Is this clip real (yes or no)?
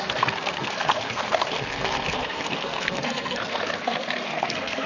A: no